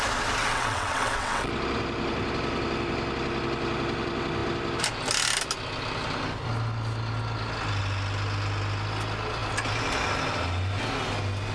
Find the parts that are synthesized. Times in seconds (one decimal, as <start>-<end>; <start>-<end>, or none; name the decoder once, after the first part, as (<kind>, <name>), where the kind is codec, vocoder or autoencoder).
0.4-1.5 (vocoder, WaveNeXt)